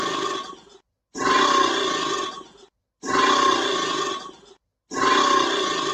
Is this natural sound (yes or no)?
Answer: yes